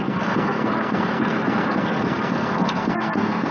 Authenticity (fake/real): fake